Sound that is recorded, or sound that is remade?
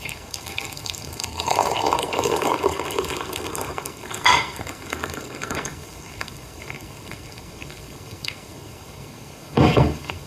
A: remade